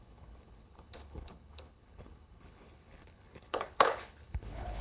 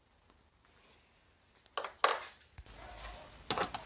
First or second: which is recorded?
second